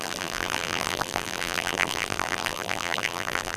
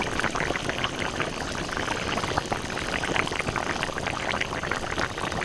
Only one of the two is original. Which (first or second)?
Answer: second